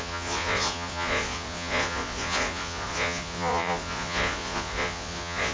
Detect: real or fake fake